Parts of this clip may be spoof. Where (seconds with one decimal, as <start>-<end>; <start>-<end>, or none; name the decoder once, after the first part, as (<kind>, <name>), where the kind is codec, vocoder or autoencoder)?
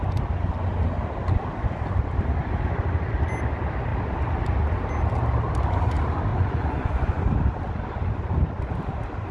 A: 6.3-7.2 (vocoder, Vocos)